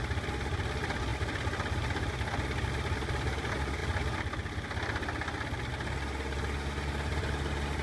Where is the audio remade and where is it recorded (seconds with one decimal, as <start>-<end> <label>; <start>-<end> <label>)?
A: 0.0-7.8 recorded